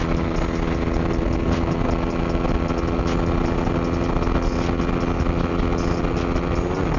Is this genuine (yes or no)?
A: yes